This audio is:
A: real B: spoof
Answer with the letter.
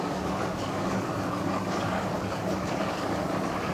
B